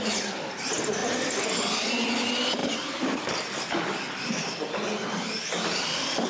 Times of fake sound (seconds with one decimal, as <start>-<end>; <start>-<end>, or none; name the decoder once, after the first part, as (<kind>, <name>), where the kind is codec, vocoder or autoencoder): 2.6-3.5 (vocoder, BigVGAN v2)